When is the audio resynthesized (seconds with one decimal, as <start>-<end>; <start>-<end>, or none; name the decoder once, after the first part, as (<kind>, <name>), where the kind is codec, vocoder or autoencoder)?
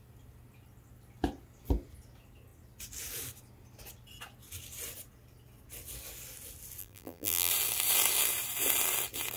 6.8-7.5 (vocoder, BigVGAN v2)